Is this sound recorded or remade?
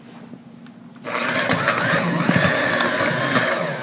recorded